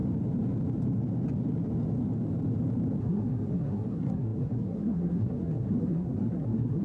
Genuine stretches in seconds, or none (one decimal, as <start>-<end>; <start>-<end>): 0.0-3.0